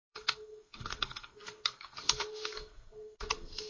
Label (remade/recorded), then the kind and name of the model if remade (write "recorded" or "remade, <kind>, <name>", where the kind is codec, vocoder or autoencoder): remade, codec, SNAC